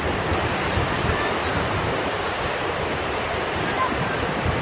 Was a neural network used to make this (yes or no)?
yes